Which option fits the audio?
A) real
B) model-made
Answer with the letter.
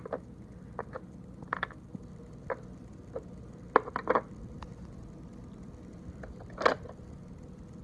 A